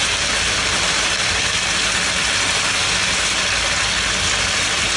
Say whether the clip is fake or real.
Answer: real